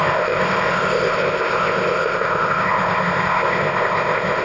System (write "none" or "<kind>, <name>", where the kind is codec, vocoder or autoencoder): codec, ZipCodec